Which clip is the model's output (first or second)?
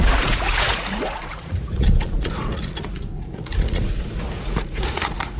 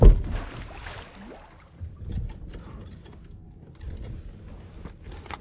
first